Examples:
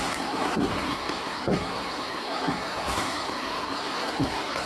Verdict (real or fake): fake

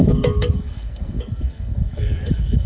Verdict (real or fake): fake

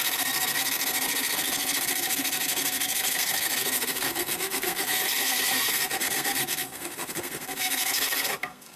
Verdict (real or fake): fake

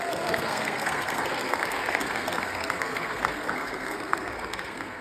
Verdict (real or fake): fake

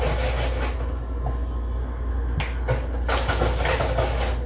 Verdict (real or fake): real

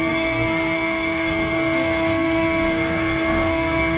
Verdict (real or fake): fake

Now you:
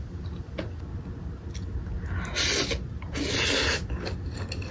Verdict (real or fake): real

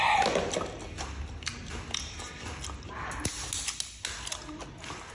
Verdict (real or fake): real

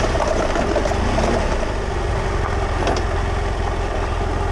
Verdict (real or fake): real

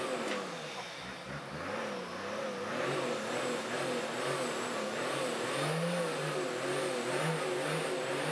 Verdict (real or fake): real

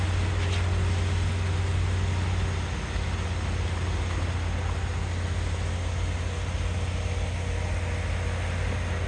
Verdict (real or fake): real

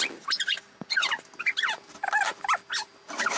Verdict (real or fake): real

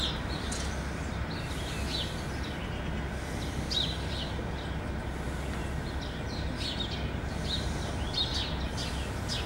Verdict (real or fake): real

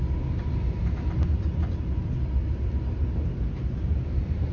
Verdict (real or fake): real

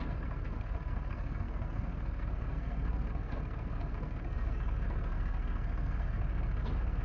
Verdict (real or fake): fake